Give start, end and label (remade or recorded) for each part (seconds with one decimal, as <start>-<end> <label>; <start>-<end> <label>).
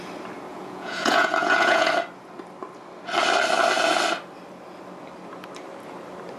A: 0.0-0.5 recorded; 0.5-1.9 remade; 1.9-6.4 recorded